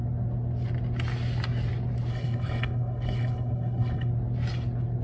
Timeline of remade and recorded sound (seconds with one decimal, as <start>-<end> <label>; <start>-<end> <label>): 0.0-2.1 recorded; 2.1-4.1 remade; 4.1-5.0 recorded